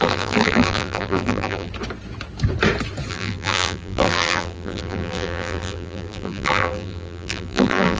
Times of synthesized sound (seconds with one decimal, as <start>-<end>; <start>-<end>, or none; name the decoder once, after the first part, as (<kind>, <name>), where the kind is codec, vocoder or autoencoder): 0.0-1.7 (vocoder, BigVGAN v2); 3.1-8.0